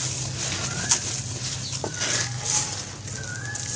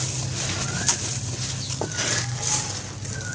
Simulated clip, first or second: second